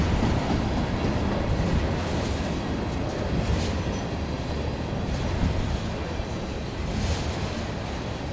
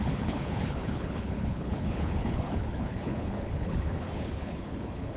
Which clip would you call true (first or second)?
first